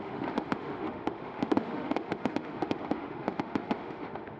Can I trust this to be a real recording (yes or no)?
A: no